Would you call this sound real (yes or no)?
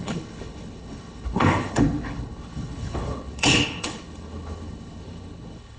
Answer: no